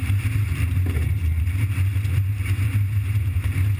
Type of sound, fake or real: real